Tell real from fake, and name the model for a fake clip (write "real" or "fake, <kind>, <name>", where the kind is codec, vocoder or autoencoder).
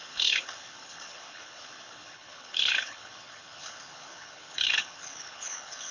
fake, codec, HILCodec